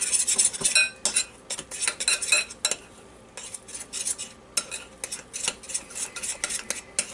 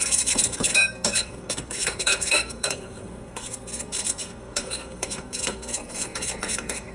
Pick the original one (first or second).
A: first